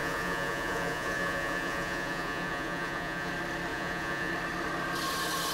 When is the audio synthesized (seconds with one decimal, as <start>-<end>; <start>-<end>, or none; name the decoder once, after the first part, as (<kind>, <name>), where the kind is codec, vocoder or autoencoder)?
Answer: 0.0-3.3 (vocoder, Vocos); 3.7-4.3